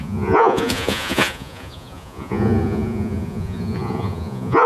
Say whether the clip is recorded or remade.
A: remade